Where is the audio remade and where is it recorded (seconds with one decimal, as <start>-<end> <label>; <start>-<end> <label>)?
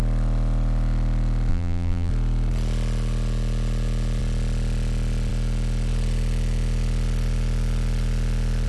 0.0-1.5 recorded; 1.5-2.1 remade; 2.1-8.7 recorded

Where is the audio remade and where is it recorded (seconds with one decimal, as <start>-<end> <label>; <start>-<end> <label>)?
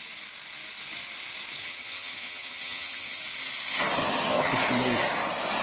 0.0-1.6 recorded; 1.6-3.2 remade; 3.2-4.0 recorded; 4.0-4.5 remade; 4.5-5.6 recorded